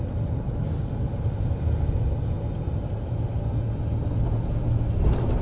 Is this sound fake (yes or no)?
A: no